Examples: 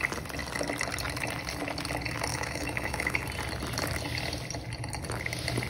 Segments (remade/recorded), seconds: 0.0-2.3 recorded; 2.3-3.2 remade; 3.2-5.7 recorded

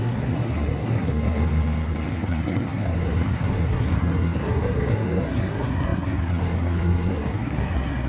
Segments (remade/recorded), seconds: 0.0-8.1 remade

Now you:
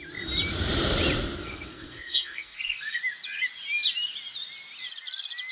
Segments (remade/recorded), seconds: 0.0-1.4 recorded; 1.4-3.0 remade; 3.0-5.5 recorded